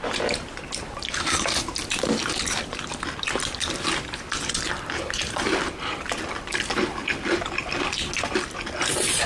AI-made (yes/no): yes